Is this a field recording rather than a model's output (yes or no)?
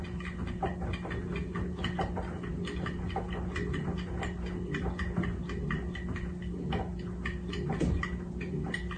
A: yes